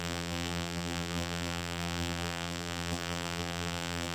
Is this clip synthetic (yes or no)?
yes